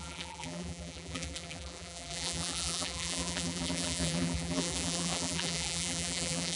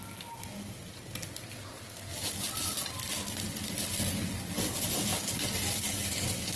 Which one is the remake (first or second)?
first